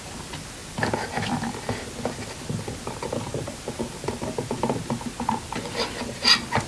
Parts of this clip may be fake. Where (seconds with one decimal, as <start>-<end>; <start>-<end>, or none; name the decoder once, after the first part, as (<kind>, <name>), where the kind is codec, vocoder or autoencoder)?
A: none